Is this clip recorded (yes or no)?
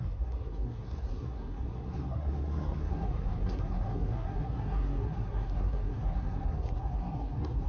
no